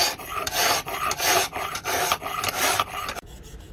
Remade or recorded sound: remade